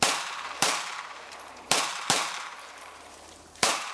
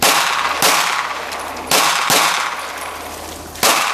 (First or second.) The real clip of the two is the second